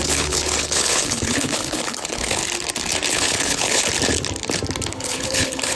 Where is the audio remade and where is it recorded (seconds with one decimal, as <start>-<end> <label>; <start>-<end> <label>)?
0.0-2.4 remade; 2.4-3.1 recorded; 3.1-3.8 remade; 3.8-4.9 recorded; 4.9-5.8 remade